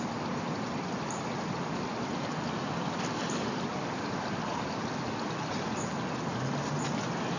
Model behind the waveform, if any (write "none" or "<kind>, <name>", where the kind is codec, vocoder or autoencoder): none